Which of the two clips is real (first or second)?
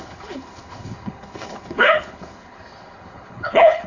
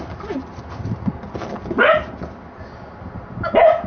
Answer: second